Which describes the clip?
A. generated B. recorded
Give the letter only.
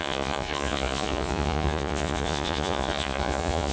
A